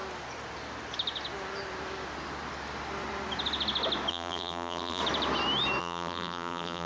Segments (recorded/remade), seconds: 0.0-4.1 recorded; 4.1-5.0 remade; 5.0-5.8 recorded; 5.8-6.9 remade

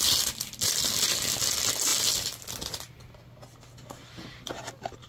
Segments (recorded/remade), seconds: 0.0-5.1 recorded

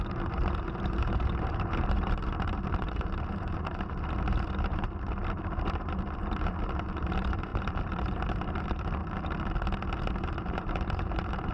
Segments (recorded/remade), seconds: 0.0-9.0 remade; 9.0-10.1 recorded; 10.1-11.5 remade

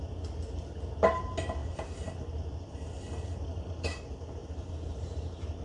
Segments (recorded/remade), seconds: 0.0-1.6 recorded; 1.6-3.8 remade; 3.8-4.4 recorded; 4.4-5.6 remade

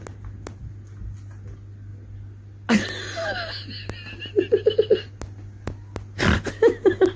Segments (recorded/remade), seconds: 0.0-7.2 recorded

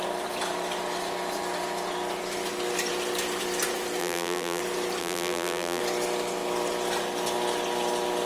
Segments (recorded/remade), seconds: 0.0-4.0 recorded; 4.0-4.6 remade; 4.6-5.0 recorded; 5.0-5.8 remade; 5.8-8.3 recorded

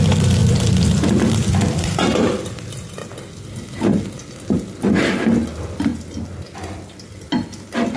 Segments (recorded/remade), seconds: 0.0-0.4 recorded; 0.4-2.9 remade; 2.9-8.0 recorded